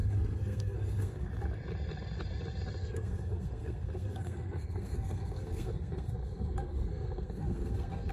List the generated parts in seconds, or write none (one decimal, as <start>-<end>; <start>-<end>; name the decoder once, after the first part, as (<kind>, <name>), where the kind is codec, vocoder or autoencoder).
0.0-1.3 (codec, SNAC); 2.8-8.1